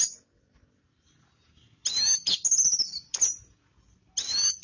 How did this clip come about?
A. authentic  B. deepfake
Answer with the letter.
A